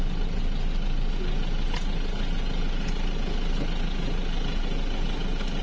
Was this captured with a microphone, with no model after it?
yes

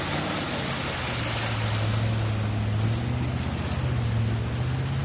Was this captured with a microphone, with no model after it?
yes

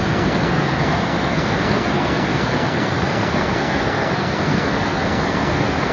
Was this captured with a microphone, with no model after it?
no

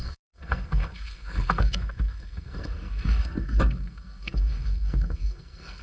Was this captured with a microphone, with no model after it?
no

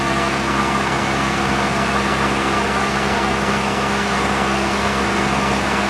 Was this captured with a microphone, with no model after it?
no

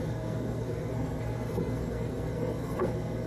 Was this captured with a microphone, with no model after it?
no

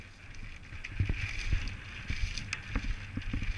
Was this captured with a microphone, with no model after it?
yes